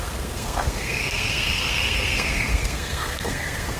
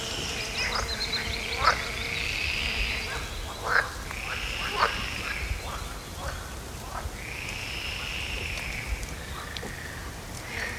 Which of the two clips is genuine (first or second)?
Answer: second